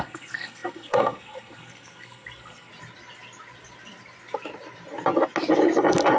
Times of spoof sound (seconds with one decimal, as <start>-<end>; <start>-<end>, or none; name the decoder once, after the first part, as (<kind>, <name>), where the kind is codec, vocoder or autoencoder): 0.0-2.7 (codec, SNAC)